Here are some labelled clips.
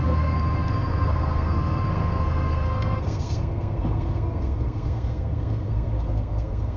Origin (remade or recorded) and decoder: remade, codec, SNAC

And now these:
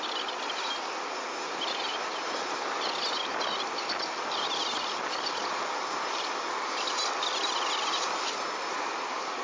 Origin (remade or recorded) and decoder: recorded